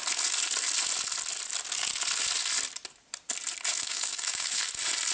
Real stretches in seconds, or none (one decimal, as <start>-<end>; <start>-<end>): 0.0-3.7; 4.6-5.1